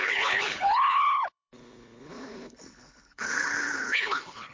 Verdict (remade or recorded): remade